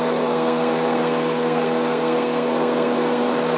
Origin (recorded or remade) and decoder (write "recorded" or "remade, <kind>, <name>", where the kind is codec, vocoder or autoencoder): remade, codec, SNAC